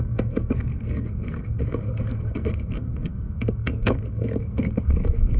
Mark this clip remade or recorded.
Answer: remade